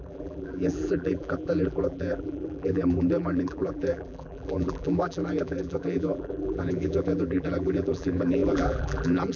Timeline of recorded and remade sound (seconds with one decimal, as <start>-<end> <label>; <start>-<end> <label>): 0.0-9.4 remade